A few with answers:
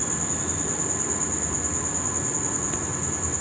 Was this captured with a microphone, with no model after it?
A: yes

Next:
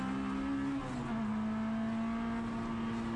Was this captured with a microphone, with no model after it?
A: yes